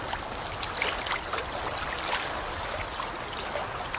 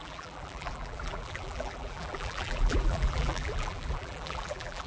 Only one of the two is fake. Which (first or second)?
second